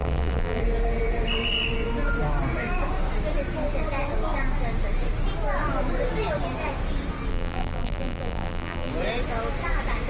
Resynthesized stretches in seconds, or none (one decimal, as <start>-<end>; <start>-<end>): 0.0-0.6; 7.3-8.9